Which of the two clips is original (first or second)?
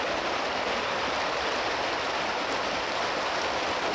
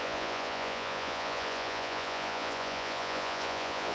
first